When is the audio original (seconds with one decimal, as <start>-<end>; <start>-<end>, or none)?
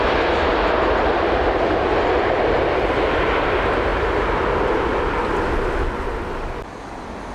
3.9-4.5